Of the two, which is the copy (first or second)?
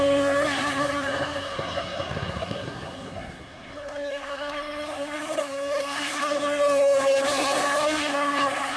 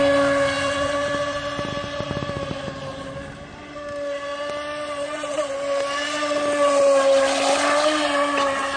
first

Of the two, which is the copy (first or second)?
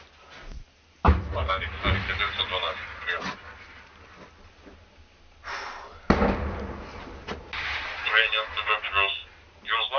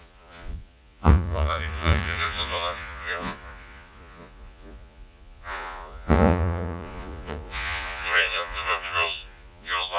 second